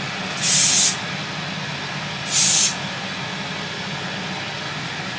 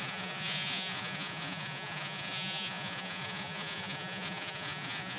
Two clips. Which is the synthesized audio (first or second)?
second